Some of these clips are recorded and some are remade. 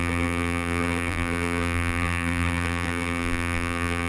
remade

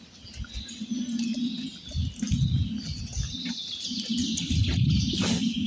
recorded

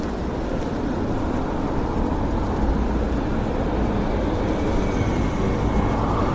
recorded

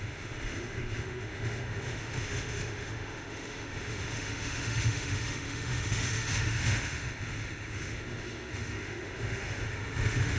remade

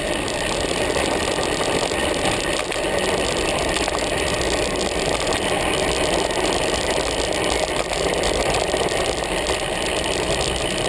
recorded